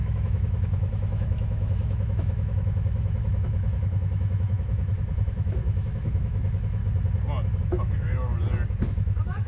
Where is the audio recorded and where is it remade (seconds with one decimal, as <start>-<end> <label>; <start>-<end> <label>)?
0.0-6.8 remade; 6.8-7.6 recorded; 7.6-8.3 remade; 8.3-8.8 recorded; 8.8-9.5 remade